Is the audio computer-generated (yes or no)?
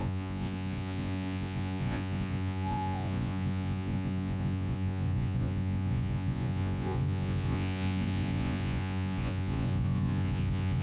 yes